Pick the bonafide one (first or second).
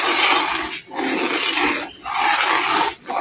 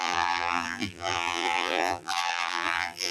first